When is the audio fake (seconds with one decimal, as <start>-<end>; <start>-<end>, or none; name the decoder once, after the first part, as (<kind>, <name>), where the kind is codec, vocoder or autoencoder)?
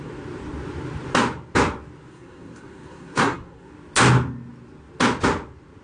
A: 2.1-3.7 (codec, SNAC)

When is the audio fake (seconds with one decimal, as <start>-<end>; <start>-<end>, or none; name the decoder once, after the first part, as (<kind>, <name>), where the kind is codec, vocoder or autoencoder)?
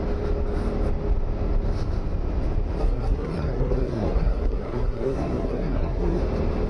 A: 2.8-6.2 (codec, SNAC)